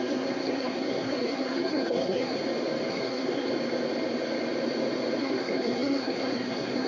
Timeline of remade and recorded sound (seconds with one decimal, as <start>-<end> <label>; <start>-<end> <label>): 0.0-2.4 remade; 2.4-2.9 recorded; 2.9-3.5 remade; 3.5-5.2 recorded; 5.2-6.9 remade